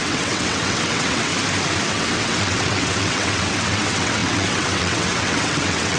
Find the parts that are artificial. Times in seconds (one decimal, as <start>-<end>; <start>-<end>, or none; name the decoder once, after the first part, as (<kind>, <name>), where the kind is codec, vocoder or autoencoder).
0.0-1.3 (vocoder, WaveNeXt); 1.9-6.0